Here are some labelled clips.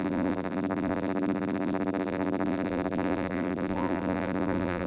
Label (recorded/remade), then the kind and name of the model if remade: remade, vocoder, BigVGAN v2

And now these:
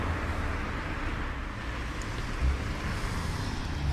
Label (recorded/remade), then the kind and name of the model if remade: recorded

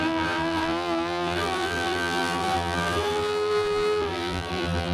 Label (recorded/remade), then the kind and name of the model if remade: remade, vocoder, BigVGAN v2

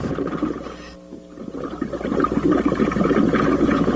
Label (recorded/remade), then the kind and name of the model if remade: recorded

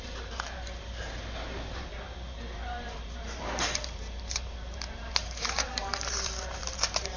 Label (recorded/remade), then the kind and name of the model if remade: remade, vocoder, BigVGAN v2